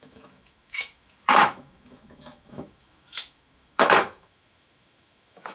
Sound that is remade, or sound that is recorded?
remade